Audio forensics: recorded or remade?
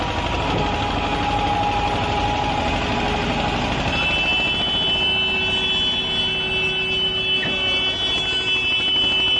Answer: recorded